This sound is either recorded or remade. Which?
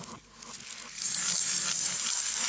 recorded